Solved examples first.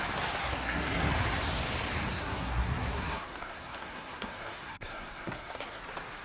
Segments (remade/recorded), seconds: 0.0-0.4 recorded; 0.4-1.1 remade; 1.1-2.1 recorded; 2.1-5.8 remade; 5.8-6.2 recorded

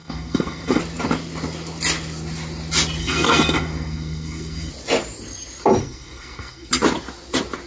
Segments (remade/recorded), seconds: 0.0-0.8 remade; 0.8-3.0 recorded; 3.0-4.7 remade; 4.7-5.8 recorded; 5.8-6.7 remade; 6.7-7.7 recorded

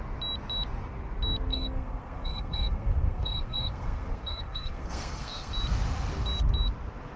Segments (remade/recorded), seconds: 0.0-1.5 recorded; 1.5-5.5 remade; 5.5-7.2 recorded

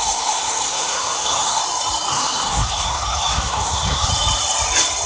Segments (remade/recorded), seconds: 0.0-1.6 remade; 1.6-2.1 recorded; 2.1-4.1 remade; 4.1-5.1 recorded

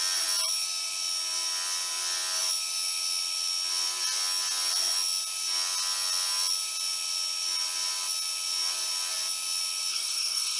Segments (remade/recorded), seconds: 0.0-9.9 recorded; 9.9-10.6 remade

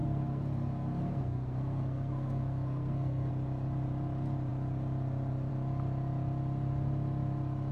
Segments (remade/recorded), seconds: 0.0-3.3 remade; 3.3-7.7 recorded